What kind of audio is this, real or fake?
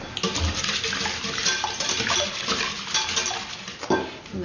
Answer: real